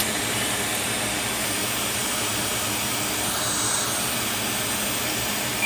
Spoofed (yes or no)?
no